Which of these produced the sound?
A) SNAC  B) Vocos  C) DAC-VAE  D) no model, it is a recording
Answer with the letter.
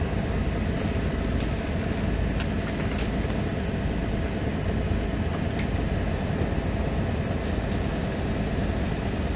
D